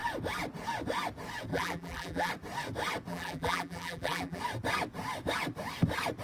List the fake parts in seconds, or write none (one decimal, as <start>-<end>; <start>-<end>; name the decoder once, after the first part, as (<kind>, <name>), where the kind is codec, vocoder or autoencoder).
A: 1.5-2.3 (vocoder, BigVGAN v2); 3.1-4.4